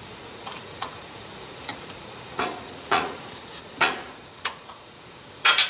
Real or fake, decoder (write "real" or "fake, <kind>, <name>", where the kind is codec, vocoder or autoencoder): fake, vocoder, Vocos